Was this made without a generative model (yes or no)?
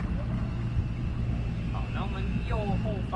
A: yes